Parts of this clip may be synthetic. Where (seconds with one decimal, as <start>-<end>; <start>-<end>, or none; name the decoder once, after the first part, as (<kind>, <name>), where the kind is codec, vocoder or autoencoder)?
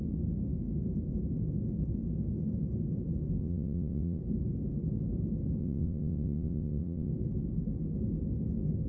3.4-4.2 (vocoder, WaveNeXt); 5.6-7.1